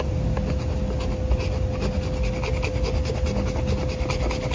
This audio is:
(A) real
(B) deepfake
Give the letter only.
A